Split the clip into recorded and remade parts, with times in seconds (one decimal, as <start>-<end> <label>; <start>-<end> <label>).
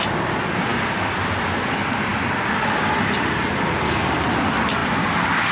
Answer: 0.0-5.5 recorded